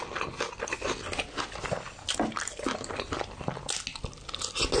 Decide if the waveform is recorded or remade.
recorded